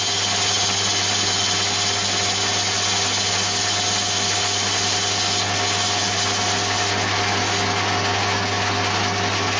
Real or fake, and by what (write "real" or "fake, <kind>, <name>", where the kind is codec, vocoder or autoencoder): real